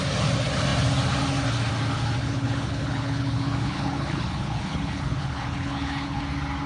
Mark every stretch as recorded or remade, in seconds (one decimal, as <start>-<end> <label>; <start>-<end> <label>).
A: 0.0-2.2 recorded; 2.2-6.2 remade; 6.2-6.7 recorded